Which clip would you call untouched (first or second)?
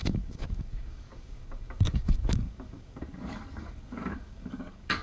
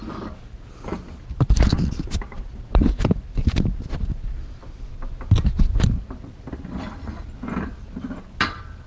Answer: second